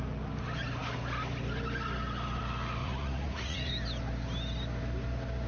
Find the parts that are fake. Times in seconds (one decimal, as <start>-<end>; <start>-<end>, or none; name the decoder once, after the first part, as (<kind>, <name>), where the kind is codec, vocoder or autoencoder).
2.8-3.7 (vocoder, Vocos)